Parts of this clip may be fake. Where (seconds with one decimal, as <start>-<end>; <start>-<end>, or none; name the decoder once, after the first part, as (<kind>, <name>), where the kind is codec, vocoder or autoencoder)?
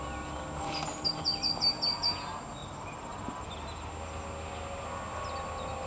2.6-3.9 (vocoder, BigVGAN v2)